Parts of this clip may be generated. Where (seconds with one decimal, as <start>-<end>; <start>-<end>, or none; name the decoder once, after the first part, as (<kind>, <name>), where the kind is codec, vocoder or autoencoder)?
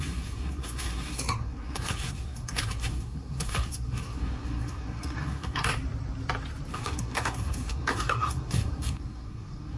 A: 0.0-5.7 (codec, SNAC); 6.7-9.8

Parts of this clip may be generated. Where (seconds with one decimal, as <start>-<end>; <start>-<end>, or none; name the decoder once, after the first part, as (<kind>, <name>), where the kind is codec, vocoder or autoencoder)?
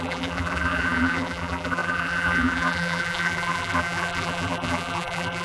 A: 0.0-5.4 (vocoder, BigVGAN v2)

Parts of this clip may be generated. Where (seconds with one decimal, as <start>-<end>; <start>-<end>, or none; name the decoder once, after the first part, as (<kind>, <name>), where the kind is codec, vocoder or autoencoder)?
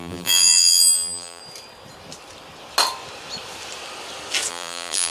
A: 0.0-1.4 (vocoder, BigVGAN v2); 4.5-5.1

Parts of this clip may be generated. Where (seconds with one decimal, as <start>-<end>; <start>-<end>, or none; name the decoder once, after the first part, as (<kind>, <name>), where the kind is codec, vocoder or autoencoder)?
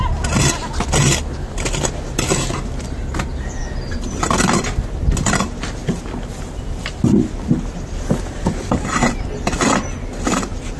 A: none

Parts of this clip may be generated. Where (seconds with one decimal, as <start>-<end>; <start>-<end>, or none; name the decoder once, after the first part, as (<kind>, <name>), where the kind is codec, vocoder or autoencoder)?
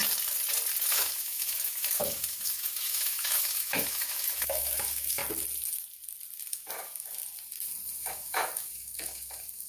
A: 0.8-5.2 (autoencoder, DAC-VAE); 6.5-7.2; 7.9-9.7